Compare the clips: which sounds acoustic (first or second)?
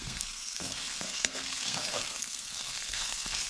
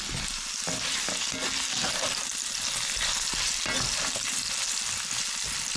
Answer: second